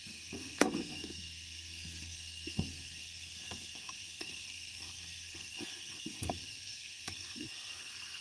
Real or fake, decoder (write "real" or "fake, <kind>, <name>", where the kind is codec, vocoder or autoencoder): fake, codec, SNAC